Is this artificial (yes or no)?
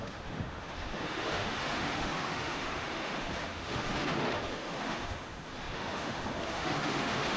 yes